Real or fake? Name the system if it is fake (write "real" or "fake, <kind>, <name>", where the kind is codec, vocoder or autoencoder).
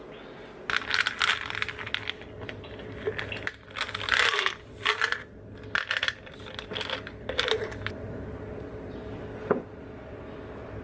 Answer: real